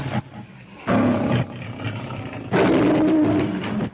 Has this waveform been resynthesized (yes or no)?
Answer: no